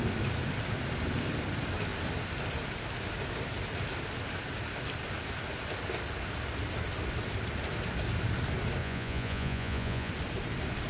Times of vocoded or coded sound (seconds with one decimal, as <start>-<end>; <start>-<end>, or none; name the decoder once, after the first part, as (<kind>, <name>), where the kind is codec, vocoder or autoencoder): 8.8-10.1 (vocoder, Vocos)

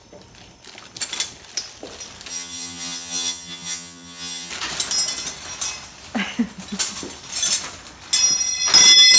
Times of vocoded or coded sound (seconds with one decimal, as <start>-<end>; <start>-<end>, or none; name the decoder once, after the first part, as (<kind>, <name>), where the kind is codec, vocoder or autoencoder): 2.3-4.5 (vocoder, HiFi-GAN)